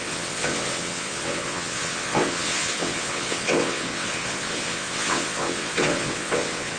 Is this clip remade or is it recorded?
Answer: remade